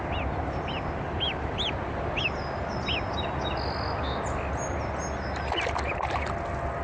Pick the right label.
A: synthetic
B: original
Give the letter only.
B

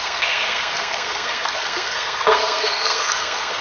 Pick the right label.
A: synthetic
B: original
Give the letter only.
A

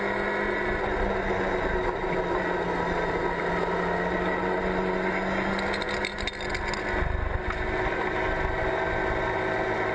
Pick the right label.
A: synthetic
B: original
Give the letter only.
B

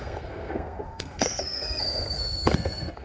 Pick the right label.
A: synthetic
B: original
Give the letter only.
A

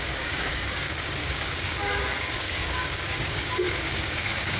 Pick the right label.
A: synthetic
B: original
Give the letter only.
A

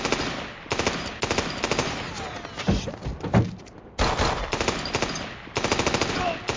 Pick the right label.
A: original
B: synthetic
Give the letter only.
A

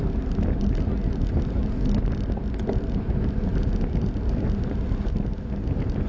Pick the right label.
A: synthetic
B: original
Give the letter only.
B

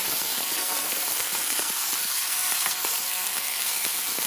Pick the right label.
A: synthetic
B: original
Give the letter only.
A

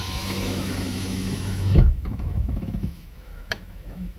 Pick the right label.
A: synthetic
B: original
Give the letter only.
A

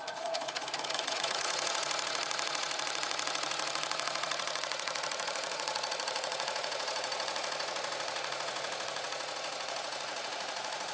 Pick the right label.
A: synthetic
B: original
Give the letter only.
A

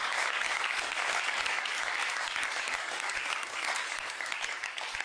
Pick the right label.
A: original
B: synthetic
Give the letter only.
B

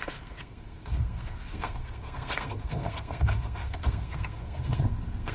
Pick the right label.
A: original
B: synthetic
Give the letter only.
B